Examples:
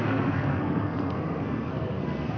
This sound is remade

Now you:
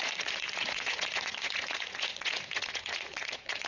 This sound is remade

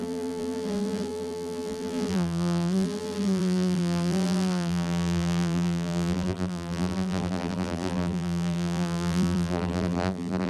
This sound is remade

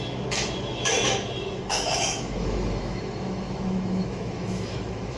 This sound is remade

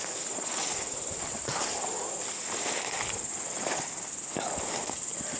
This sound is recorded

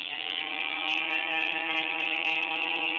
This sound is remade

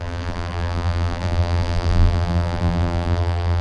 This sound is remade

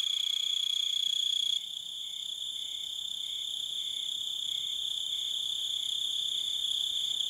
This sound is remade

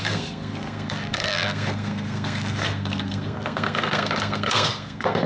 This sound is remade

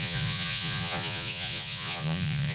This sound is remade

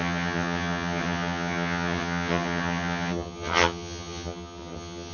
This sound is remade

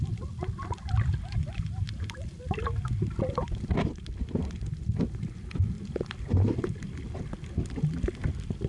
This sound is recorded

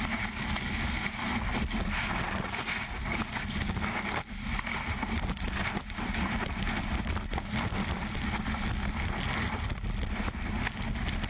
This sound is recorded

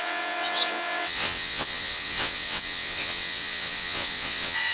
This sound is remade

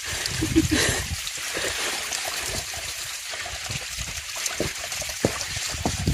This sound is remade